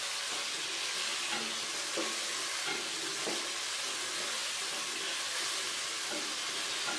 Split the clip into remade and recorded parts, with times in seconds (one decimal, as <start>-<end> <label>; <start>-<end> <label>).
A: 0.0-7.0 recorded